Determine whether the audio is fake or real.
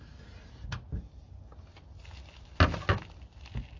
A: real